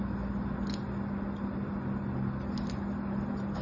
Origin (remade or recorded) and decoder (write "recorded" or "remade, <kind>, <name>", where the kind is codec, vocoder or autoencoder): recorded